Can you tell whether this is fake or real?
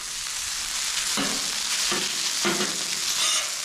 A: real